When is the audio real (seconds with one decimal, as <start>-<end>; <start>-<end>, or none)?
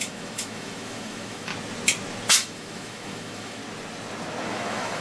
1.5-2.3; 3.6-4.5